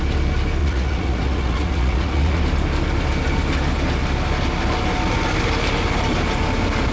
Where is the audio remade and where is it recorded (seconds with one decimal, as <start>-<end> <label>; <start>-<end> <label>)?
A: 0.0-0.6 recorded; 0.6-2.4 remade; 2.4-6.9 recorded